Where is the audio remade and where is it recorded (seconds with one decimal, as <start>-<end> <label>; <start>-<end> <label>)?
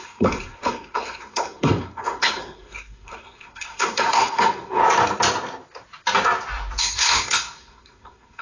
0.0-4.8 remade; 4.8-6.8 recorded; 6.8-8.4 remade